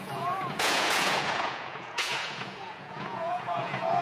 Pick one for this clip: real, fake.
fake